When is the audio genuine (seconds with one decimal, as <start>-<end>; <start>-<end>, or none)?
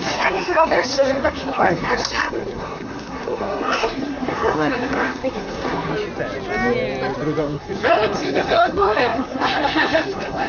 5.9-7.4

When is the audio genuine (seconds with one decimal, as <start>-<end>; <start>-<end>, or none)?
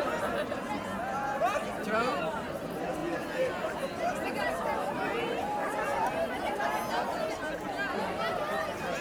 0.0-9.0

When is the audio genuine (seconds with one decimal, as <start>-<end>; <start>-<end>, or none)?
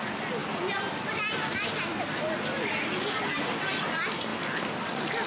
0.0-5.3